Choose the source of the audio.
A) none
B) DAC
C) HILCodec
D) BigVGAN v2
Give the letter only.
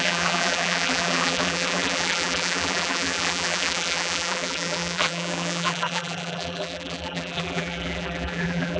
D